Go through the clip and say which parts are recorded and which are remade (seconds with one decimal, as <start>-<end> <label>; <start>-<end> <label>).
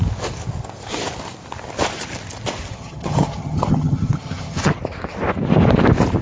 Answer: 0.0-2.7 recorded; 2.7-4.8 remade; 4.8-6.2 recorded